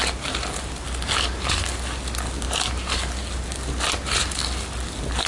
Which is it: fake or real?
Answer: real